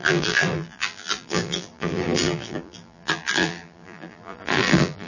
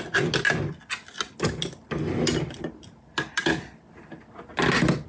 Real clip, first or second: second